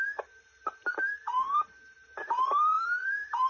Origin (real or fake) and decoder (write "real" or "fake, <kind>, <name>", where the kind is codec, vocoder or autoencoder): fake, vocoder, BigVGAN v2